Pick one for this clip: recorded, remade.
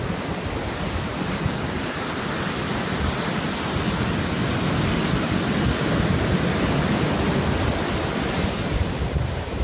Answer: recorded